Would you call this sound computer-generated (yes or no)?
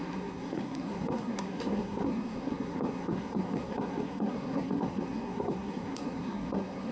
yes